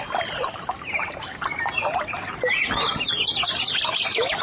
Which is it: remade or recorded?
recorded